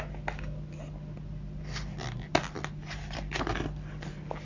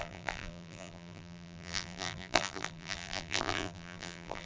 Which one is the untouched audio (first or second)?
first